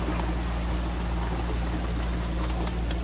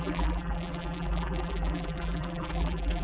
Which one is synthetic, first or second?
second